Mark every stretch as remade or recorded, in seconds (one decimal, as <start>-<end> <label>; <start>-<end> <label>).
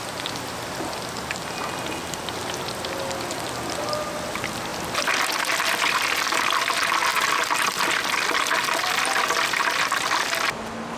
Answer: 0.0-11.0 recorded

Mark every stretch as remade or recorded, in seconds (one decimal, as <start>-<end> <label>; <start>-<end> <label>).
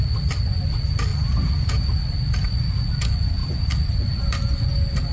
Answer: 0.0-5.1 recorded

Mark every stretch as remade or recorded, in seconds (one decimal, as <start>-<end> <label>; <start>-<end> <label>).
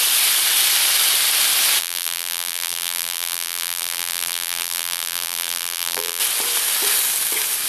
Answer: 0.0-1.8 recorded; 1.8-6.2 remade; 6.2-7.7 recorded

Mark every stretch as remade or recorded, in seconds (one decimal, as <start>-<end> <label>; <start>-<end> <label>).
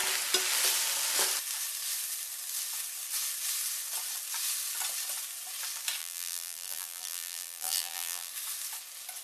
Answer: 0.0-6.0 recorded; 6.0-8.3 remade; 8.3-9.2 recorded